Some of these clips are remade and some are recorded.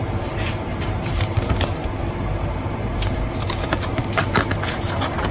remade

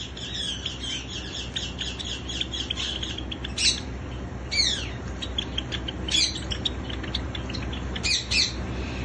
recorded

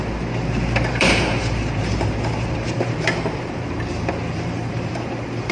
remade